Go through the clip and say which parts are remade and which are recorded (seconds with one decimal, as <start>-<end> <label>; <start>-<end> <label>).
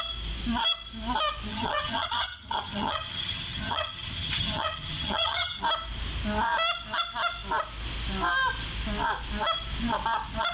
0.0-1.5 recorded; 1.5-5.6 remade; 5.6-10.5 recorded